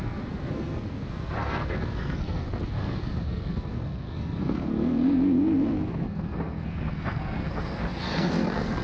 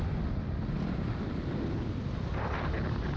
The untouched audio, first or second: second